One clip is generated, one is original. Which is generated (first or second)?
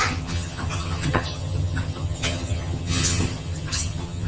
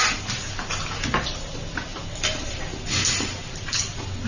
first